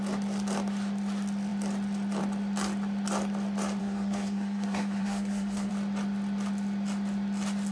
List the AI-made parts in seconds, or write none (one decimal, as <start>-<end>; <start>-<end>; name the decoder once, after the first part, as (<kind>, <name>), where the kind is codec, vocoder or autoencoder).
3.8-5.7 (codec, SNAC)